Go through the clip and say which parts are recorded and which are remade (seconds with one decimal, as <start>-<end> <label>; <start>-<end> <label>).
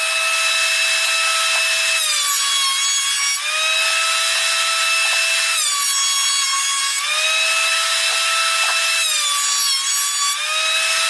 0.0-11.1 recorded